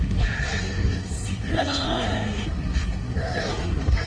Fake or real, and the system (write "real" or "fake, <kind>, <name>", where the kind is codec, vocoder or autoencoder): fake, codec, SNAC